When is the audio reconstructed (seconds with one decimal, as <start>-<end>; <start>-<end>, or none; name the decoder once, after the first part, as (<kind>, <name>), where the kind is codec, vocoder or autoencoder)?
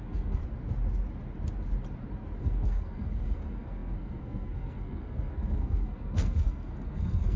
0.0-0.4 (codec, SNAC); 2.4-7.4